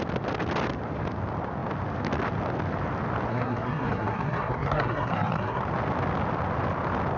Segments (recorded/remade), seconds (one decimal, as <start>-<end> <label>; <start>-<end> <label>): 0.0-3.3 recorded; 3.3-5.6 remade; 5.6-7.2 recorded